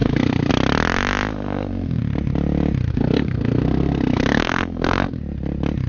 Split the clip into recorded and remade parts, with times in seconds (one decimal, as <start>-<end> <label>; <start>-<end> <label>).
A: 0.0-0.5 remade; 0.5-1.3 recorded; 1.3-2.0 remade; 2.0-2.9 recorded; 2.9-5.2 remade; 5.2-5.9 recorded